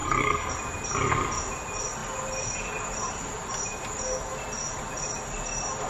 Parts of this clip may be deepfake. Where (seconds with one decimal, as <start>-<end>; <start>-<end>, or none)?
0.0-0.5